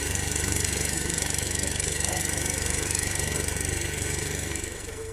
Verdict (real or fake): fake